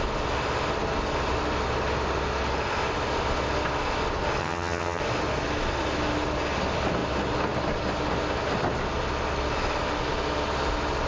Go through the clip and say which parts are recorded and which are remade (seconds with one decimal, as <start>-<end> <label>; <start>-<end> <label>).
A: 0.0-4.4 recorded; 4.4-5.0 remade; 5.0-11.1 recorded